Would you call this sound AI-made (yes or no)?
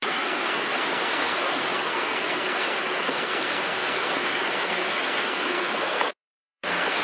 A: yes